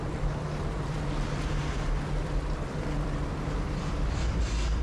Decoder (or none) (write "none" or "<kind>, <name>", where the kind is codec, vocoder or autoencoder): vocoder, BigVGAN v2